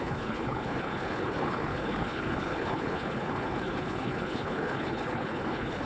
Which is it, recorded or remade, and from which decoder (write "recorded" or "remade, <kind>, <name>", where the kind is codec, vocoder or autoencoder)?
remade, codec, HILCodec